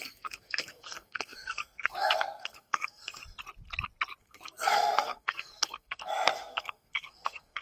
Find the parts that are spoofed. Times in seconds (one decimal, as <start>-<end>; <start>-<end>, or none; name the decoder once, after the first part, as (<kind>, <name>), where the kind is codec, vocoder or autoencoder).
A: 0.0-3.2 (codec, SNAC); 4.2-7.6